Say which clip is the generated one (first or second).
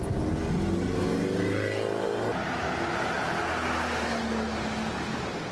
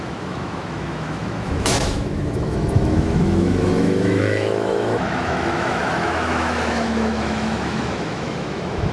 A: second